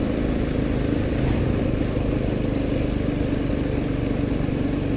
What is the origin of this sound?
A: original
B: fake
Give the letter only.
A